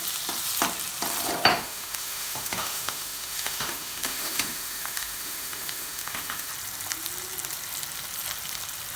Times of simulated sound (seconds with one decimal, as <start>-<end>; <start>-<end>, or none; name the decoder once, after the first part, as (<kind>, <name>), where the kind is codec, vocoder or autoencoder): 1.5-6.5 (autoencoder, DAC-VAE)